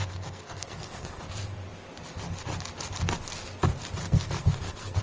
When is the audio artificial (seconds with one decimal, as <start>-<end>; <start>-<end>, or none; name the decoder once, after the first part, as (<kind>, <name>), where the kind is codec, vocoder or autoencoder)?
0.0-1.2 (codec, SNAC); 4.0-5.0